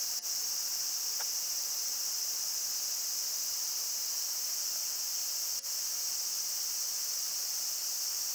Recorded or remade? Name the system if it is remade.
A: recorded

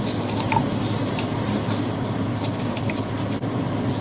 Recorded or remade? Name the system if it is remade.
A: recorded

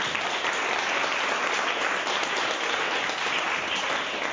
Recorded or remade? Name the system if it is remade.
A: recorded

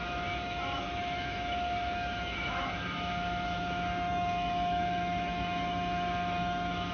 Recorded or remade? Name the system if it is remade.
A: remade, autoencoder, DAC-VAE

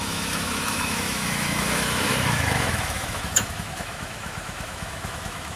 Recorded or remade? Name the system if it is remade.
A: remade, autoencoder, DAC-VAE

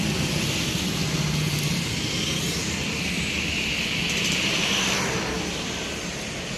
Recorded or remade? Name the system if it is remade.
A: recorded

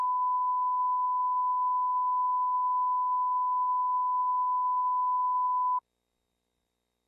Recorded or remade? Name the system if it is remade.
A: recorded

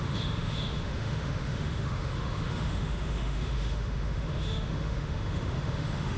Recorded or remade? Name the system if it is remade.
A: remade, autoencoder, DAC-VAE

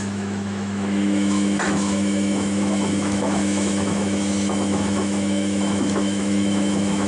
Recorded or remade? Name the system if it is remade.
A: remade, autoencoder, DAC-VAE